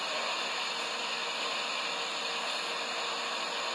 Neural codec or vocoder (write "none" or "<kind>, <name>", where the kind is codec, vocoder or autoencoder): none